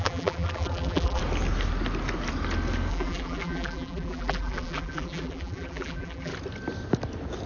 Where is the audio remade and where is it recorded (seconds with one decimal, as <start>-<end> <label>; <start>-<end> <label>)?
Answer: 0.0-1.2 remade; 1.2-2.9 recorded; 2.9-6.3 remade; 6.3-7.5 recorded

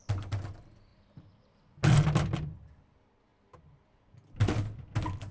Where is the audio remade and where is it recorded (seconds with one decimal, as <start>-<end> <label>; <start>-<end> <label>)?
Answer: 0.0-5.3 recorded

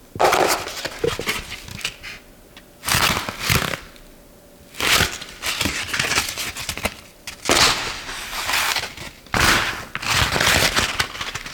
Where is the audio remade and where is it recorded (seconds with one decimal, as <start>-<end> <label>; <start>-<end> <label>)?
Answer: 0.0-11.5 recorded

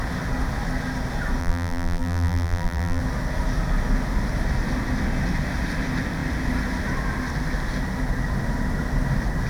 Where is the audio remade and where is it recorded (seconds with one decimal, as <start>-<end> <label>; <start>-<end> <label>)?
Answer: 0.0-1.4 recorded; 1.4-3.0 remade; 3.0-9.5 recorded

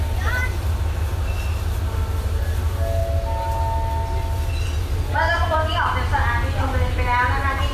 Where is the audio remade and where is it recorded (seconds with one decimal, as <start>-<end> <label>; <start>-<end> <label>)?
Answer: 0.0-5.4 recorded; 5.4-6.2 remade; 6.2-7.7 recorded

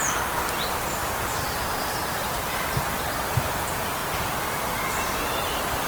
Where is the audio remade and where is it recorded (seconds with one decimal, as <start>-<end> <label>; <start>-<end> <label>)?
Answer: 0.0-1.0 remade; 1.0-2.1 recorded; 2.1-5.9 remade